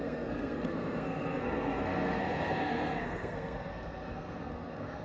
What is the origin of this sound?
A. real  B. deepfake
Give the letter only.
B